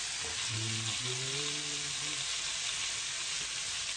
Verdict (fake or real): real